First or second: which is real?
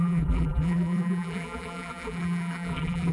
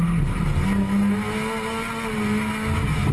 second